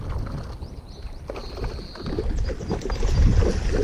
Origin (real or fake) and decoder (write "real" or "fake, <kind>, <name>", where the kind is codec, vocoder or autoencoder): real